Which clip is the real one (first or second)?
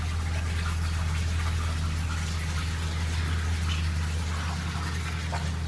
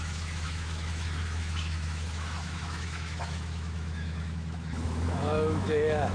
first